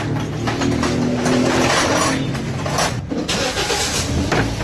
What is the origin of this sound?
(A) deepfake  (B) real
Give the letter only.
B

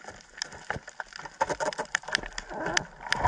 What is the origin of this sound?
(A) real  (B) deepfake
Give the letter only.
A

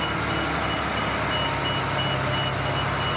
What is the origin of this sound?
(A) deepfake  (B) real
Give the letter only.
B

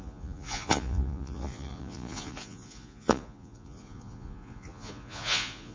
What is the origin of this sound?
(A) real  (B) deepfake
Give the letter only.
B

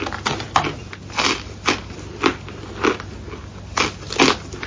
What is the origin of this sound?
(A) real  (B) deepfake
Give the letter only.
A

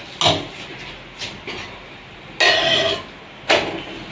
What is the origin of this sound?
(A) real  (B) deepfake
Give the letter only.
A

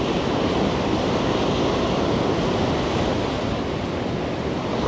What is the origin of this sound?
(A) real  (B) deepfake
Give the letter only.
A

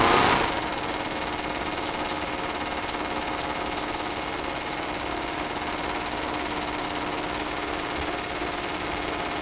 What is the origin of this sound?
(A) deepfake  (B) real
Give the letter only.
B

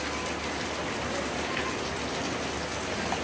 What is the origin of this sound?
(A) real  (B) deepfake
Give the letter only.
A